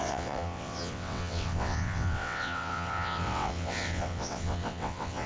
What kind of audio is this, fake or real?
fake